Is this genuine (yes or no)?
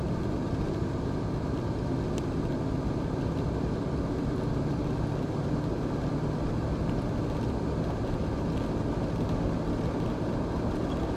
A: yes